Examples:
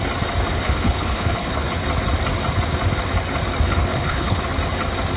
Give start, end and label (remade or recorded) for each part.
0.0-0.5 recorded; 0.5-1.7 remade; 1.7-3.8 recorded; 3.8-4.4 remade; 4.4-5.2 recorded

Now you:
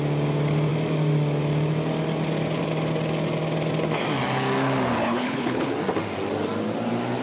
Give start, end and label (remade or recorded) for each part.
0.0-5.0 recorded; 5.0-5.7 remade; 5.7-7.2 recorded

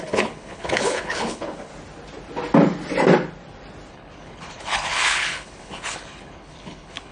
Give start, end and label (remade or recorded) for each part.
0.0-1.7 remade; 1.7-3.9 recorded; 3.9-7.1 remade

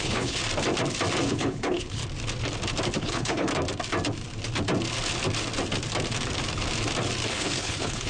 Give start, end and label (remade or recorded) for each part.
0.0-0.4 remade; 0.4-1.3 recorded; 1.3-2.0 remade; 2.0-3.0 recorded; 3.0-3.5 remade; 3.5-7.3 recorded; 7.3-8.1 remade